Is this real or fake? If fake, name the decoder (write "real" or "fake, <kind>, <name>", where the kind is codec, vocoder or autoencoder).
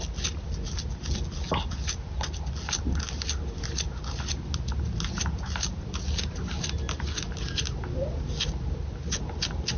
real